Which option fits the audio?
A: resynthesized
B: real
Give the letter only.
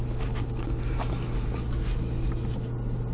B